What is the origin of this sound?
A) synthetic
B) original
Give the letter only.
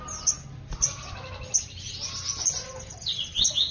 B